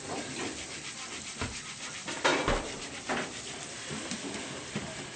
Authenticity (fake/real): real